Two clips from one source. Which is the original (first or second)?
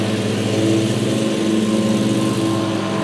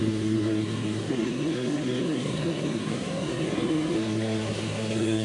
first